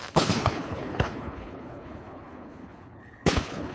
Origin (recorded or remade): remade